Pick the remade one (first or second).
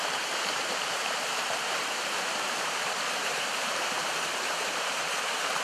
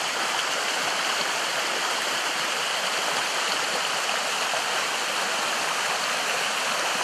first